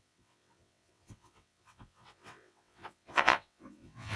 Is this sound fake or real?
fake